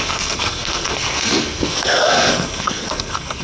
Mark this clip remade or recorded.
remade